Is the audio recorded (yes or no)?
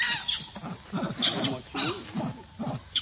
yes